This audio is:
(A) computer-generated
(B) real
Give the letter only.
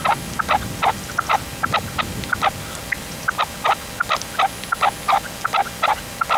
B